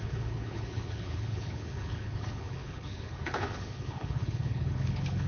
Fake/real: fake